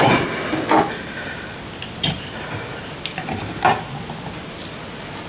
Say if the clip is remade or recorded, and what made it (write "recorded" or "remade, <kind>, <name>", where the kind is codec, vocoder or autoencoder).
recorded